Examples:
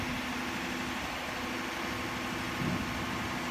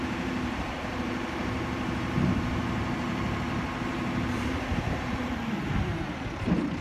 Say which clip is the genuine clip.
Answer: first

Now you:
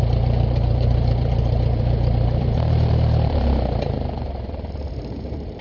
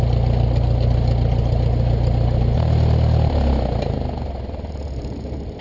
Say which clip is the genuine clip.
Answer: second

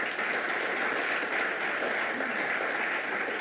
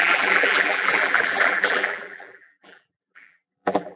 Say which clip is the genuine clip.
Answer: first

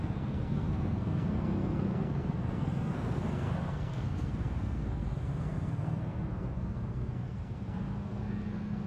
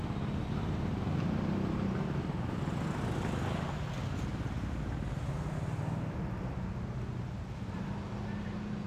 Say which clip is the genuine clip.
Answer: second